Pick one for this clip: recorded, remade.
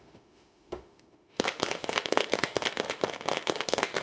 remade